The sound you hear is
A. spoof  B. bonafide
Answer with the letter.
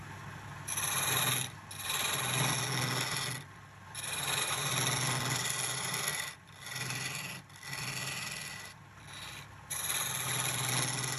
B